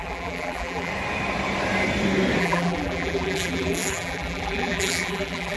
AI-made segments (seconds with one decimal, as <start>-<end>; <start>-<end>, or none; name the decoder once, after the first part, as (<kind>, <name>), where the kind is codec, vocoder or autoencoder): 0.0-0.9 (vocoder, BigVGAN v2); 2.4-5.6